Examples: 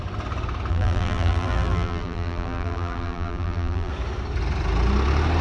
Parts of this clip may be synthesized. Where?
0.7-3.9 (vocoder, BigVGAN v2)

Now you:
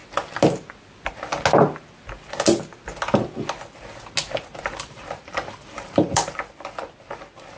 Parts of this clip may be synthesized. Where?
4.6-6.2 (vocoder, BigVGAN v2)

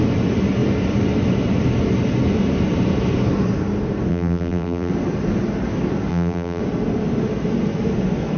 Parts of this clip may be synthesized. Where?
4.1-4.9 (vocoder, BigVGAN v2); 6.1-6.6

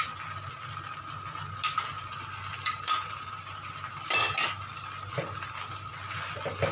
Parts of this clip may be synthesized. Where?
1.9-5.9 (vocoder, BigVGAN v2)